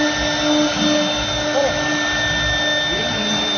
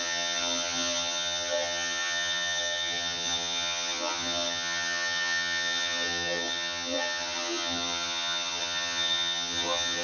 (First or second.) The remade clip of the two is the second